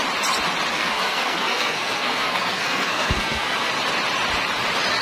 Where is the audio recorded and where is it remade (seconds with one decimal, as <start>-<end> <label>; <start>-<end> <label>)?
0.0-0.7 recorded; 0.7-3.7 remade; 3.7-5.0 recorded